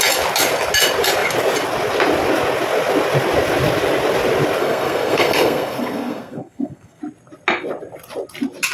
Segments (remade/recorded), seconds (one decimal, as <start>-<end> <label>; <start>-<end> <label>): 0.0-4.6 recorded; 4.6-7.0 remade; 7.0-8.7 recorded